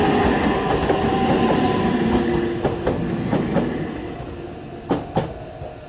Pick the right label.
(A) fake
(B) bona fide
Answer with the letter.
B